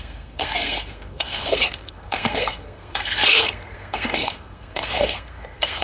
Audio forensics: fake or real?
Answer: fake